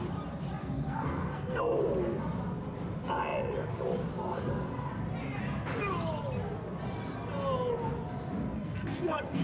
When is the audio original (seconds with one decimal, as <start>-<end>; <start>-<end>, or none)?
0.0-0.6; 1.8-8.5